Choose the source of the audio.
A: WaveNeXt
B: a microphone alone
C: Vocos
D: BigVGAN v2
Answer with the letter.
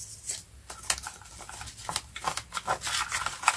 B